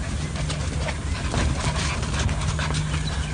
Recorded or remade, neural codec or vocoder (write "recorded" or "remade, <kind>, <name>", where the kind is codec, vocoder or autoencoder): recorded